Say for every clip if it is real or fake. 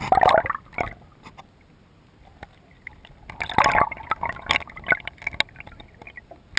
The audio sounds real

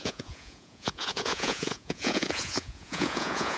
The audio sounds fake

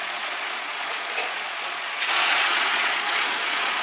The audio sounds fake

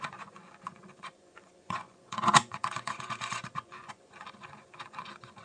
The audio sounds fake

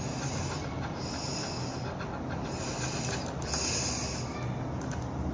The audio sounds real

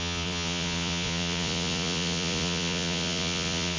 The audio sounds fake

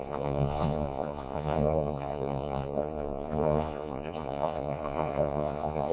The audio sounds fake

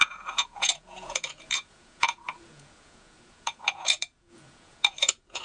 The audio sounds fake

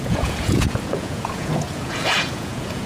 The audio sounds fake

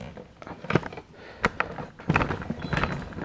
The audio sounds real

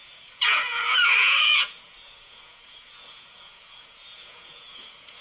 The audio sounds fake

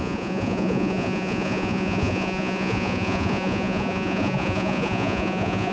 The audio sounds fake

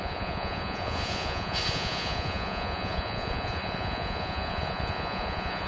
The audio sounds fake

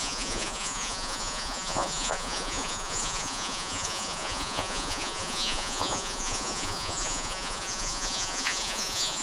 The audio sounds fake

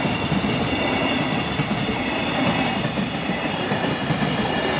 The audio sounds real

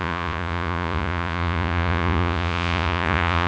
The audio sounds fake